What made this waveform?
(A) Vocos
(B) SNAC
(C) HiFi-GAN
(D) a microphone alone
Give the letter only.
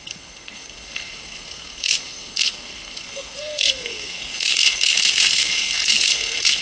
B